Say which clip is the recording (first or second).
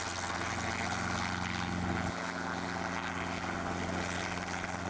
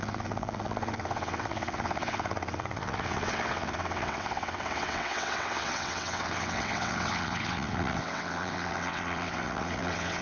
first